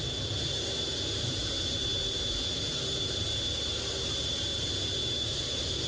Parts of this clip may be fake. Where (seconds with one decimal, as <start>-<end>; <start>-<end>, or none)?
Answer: none